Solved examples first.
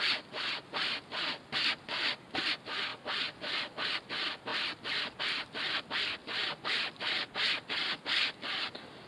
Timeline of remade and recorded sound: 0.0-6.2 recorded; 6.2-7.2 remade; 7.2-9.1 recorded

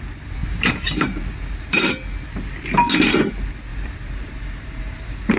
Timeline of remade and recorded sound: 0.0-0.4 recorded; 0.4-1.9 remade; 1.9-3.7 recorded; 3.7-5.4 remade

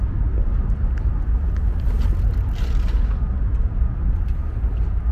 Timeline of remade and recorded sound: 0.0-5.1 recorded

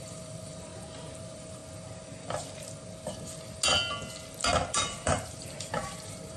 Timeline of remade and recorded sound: 0.0-0.7 remade; 0.7-1.2 recorded; 1.2-1.6 remade; 1.6-4.7 recorded; 4.7-6.4 remade